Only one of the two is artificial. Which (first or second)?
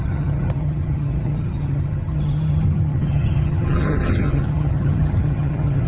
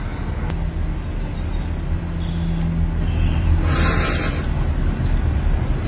first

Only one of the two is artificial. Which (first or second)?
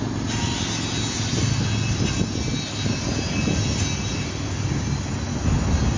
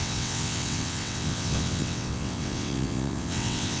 second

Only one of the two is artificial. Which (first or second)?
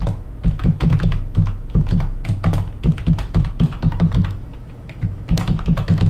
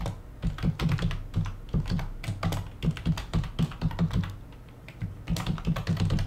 first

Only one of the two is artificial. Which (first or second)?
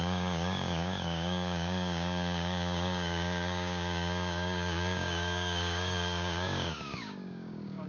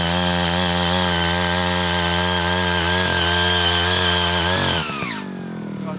first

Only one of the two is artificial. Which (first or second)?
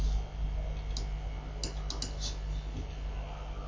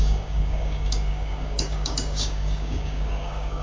second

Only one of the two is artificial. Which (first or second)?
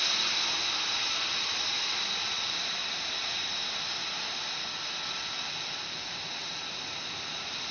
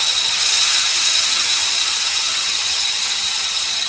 second